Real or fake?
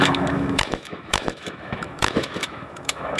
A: fake